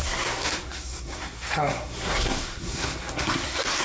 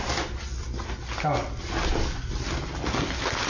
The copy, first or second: first